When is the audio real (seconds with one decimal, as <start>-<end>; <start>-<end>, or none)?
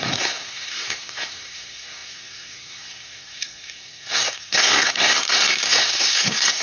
none